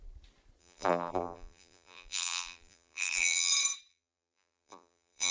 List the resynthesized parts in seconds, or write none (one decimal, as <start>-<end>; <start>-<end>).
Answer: 0.6-3.5; 3.9-5.3